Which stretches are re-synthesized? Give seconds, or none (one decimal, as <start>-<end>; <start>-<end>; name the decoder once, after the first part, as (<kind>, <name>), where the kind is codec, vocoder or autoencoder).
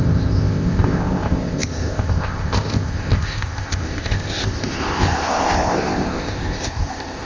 0.0-7.2 (codec, ZipCodec)